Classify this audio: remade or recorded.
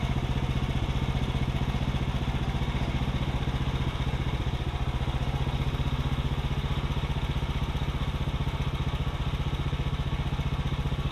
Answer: recorded